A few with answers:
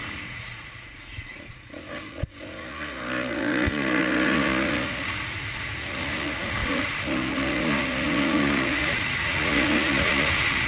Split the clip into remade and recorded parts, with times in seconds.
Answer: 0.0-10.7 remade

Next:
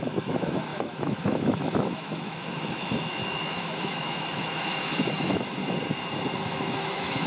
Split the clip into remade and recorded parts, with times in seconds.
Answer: 0.0-5.6 remade; 5.6-6.5 recorded; 6.5-7.3 remade

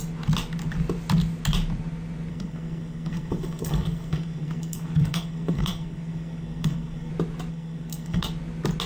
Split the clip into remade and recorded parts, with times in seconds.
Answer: 0.0-2.3 recorded; 2.3-7.1 remade; 7.1-7.5 recorded; 7.5-8.3 remade; 8.3-8.9 recorded

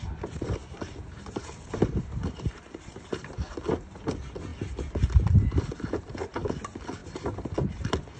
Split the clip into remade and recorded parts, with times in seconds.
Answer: 0.0-8.2 recorded